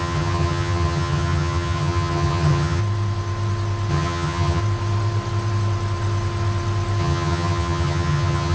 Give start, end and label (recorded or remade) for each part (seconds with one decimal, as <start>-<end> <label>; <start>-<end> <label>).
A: 0.0-2.8 remade; 2.8-3.9 recorded; 3.9-4.6 remade; 4.6-7.0 recorded; 7.0-8.5 remade